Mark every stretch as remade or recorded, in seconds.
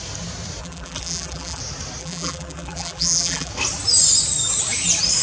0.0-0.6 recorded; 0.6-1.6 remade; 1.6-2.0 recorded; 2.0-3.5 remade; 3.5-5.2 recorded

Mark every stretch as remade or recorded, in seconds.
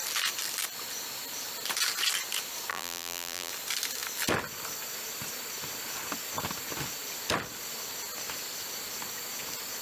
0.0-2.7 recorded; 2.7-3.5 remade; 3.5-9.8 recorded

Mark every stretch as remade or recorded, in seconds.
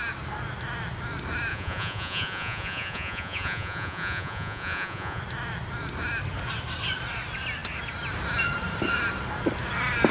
0.0-1.5 recorded; 1.5-5.2 remade; 5.2-10.1 recorded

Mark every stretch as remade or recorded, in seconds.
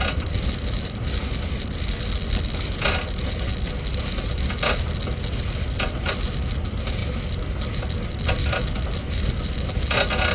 0.0-10.3 recorded